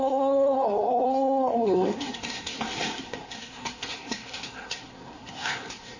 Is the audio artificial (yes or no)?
yes